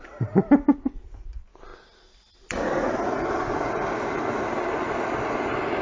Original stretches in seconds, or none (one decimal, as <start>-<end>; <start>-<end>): 0.0-5.8